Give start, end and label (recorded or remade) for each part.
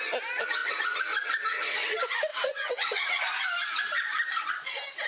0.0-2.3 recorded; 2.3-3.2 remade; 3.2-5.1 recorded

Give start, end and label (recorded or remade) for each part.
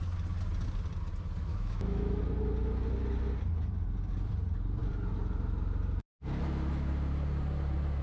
0.0-1.5 recorded; 1.5-2.2 remade; 2.2-8.0 recorded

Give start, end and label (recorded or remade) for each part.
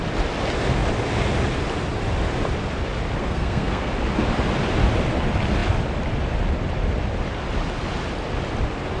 0.0-3.2 recorded; 3.2-3.9 remade; 3.9-9.0 recorded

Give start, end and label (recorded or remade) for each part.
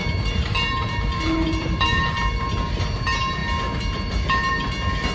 0.0-2.5 remade; 2.5-5.1 recorded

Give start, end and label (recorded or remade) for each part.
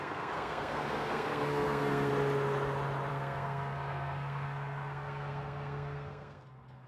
0.0-2.1 remade; 2.1-3.1 recorded; 3.1-6.9 remade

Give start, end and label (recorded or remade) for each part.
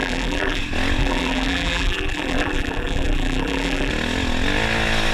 0.0-0.6 remade; 0.6-1.0 recorded; 1.0-3.9 remade; 3.9-5.1 recorded